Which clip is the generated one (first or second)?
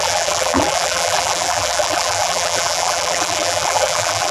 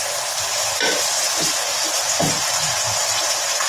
first